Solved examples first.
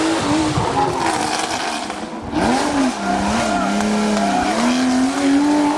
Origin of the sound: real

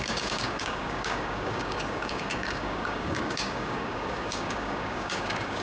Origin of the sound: fake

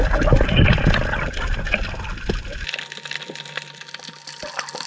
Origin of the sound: real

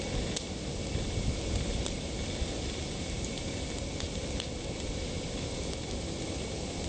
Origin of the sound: real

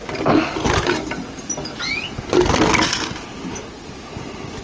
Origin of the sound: real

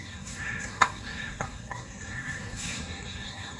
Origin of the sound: fake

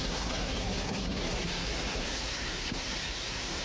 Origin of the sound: fake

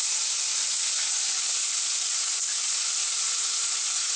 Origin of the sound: real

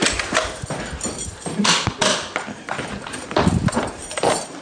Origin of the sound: real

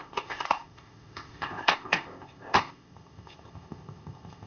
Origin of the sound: fake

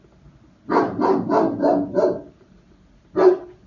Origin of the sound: real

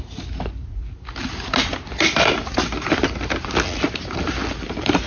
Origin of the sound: real